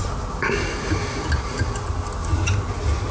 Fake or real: real